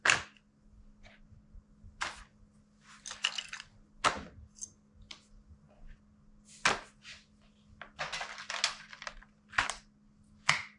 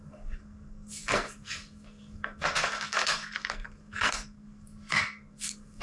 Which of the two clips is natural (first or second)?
first